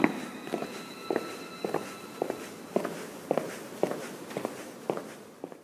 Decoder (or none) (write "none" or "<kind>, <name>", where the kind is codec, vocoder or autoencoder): none